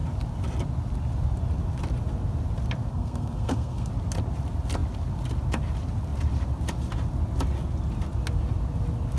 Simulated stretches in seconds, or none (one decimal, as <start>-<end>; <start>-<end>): 2.9-3.9